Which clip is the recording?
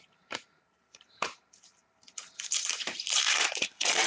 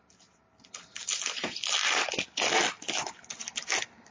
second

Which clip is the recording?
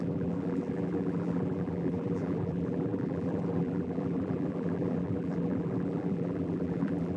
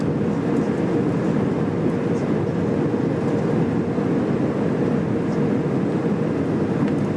second